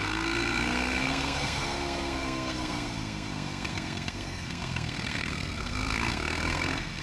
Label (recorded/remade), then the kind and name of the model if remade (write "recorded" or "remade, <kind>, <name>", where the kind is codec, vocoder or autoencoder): remade, codec, SNAC